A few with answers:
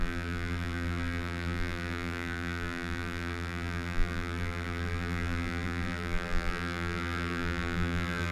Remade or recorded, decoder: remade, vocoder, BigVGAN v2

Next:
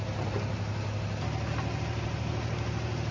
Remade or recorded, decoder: recorded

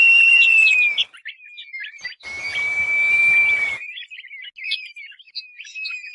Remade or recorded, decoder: recorded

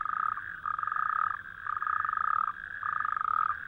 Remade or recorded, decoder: recorded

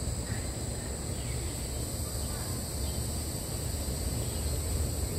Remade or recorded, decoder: recorded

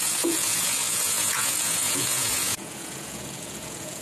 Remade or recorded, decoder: remade, vocoder, Vocos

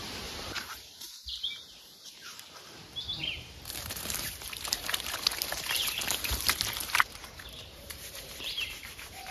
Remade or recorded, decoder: remade, vocoder, BigVGAN v2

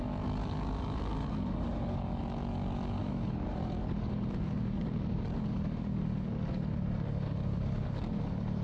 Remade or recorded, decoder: remade, codec, DAC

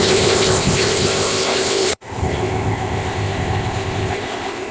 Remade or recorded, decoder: remade, codec, ZipCodec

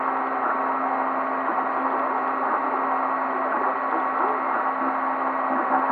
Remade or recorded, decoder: recorded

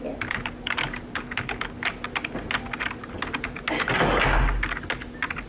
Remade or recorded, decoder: recorded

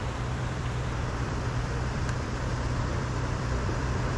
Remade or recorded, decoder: remade, vocoder, BigVGAN v2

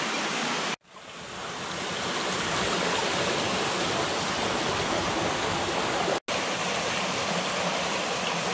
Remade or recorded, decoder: recorded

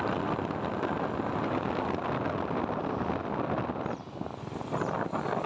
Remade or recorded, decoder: recorded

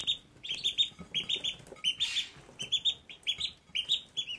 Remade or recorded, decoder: recorded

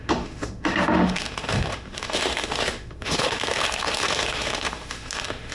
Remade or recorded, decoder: remade, autoencoder, DAC-VAE